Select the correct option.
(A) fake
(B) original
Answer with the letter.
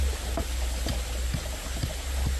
B